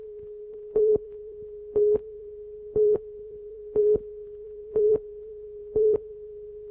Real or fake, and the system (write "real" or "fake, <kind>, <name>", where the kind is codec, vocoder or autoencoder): fake, vocoder, BigVGAN v2